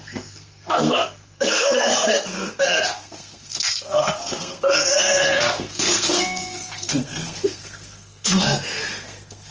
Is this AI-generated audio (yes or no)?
yes